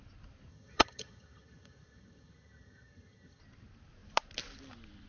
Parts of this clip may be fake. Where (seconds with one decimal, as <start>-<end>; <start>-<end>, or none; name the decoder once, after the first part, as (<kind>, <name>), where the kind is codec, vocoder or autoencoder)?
0.5-3.4 (vocoder, HiFi-GAN)